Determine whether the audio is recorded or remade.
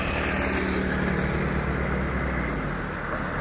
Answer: recorded